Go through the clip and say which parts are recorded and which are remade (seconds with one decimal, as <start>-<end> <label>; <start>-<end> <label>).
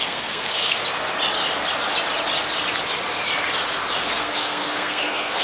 0.0-0.8 remade; 0.8-4.0 recorded; 4.0-5.4 remade